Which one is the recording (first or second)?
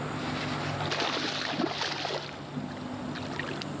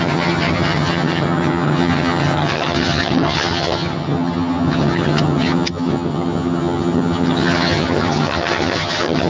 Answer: first